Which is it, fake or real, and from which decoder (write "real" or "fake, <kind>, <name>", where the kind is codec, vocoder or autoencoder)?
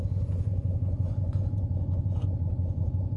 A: fake, vocoder, Vocos